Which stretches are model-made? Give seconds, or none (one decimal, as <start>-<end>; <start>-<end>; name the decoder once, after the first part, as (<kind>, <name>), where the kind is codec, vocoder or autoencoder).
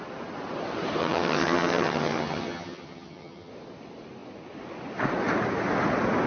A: 1.0-3.5 (vocoder, HiFi-GAN)